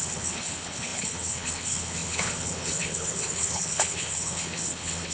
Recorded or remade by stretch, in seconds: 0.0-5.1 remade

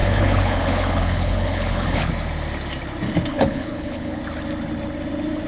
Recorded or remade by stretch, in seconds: 0.0-2.1 remade; 2.1-3.3 recorded; 3.3-4.2 remade; 4.2-5.5 recorded